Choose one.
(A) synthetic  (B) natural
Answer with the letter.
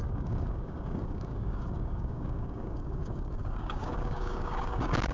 A